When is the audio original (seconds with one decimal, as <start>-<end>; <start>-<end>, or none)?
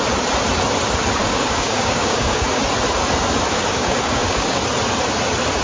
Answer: 0.0-1.2; 2.6-3.5; 4.6-5.6